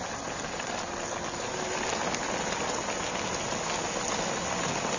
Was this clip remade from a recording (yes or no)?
no